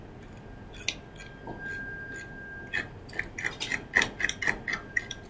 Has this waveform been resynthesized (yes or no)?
no